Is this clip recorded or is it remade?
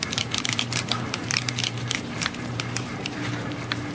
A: remade